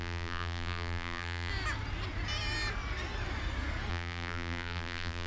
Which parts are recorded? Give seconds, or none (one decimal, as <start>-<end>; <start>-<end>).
1.5-3.9